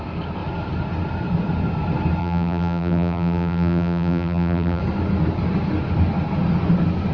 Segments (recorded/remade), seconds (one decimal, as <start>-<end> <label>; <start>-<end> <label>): 0.0-2.2 recorded; 2.2-4.8 remade; 4.8-7.1 recorded